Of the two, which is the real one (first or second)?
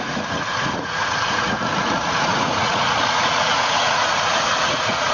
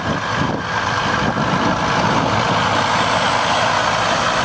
second